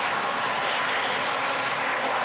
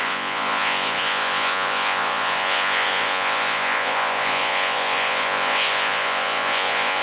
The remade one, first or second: second